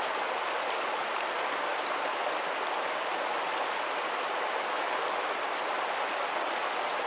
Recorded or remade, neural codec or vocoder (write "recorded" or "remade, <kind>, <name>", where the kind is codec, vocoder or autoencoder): recorded